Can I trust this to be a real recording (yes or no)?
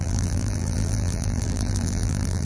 no